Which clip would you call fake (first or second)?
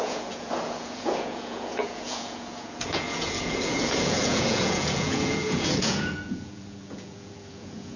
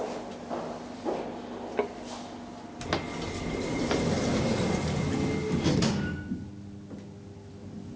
first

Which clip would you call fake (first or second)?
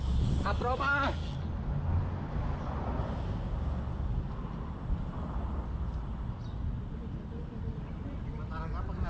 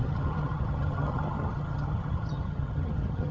second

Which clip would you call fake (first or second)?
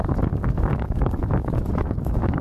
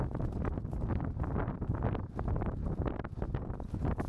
first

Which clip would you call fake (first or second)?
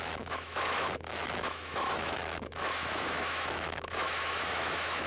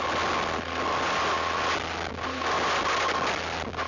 first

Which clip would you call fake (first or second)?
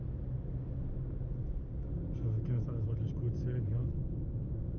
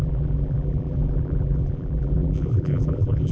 second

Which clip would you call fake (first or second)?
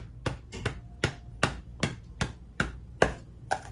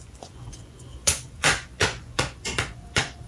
second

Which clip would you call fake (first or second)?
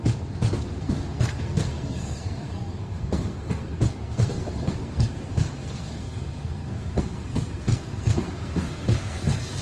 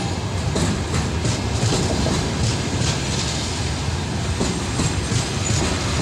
first